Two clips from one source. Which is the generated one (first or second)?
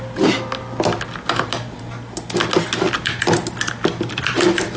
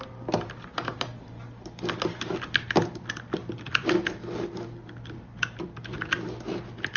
second